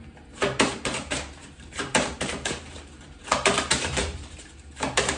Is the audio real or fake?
fake